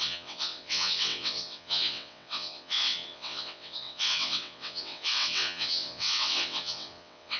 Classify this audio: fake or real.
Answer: fake